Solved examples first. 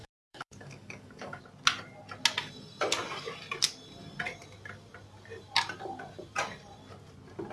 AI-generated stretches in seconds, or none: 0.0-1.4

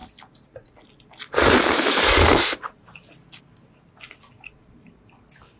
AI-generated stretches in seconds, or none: none

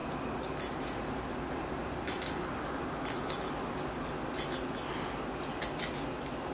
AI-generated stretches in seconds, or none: none

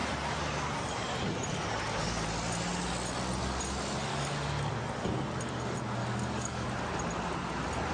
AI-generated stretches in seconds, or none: 4.1-4.7; 6.0-6.7